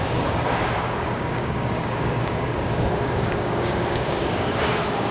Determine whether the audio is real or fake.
fake